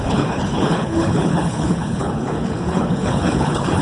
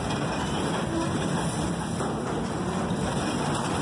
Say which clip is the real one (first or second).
second